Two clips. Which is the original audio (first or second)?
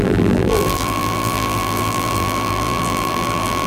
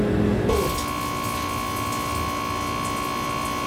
second